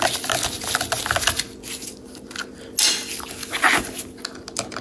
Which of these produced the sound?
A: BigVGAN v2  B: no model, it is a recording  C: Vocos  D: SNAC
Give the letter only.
B